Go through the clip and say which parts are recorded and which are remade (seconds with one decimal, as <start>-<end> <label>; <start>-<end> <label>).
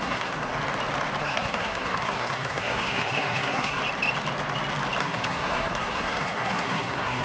0.0-0.5 remade; 0.5-1.2 recorded; 1.2-3.8 remade; 3.8-5.0 recorded; 5.0-7.2 remade